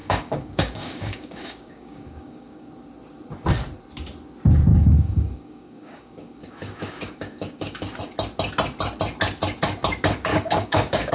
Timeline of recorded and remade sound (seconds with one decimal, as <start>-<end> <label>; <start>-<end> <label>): 0.0-2.7 remade; 2.7-4.7 recorded; 4.7-8.0 remade; 8.0-10.3 recorded; 10.3-11.1 remade